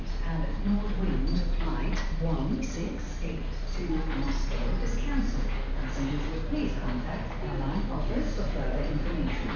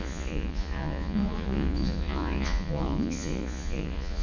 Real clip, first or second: first